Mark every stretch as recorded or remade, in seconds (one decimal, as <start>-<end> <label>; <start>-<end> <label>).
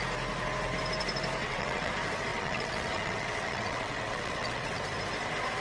0.0-1.4 recorded; 1.4-1.9 remade; 1.9-2.3 recorded; 2.3-4.8 remade; 4.8-5.6 recorded